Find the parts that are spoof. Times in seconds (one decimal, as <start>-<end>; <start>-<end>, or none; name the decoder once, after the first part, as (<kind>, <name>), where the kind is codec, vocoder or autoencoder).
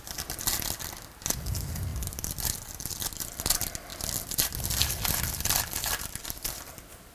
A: none